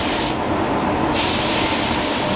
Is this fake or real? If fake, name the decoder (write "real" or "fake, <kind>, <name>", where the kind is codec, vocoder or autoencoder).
real